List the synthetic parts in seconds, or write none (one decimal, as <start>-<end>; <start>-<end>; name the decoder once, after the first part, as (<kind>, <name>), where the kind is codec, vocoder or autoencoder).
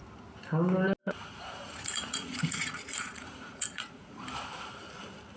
1.0-4.2 (vocoder, Vocos)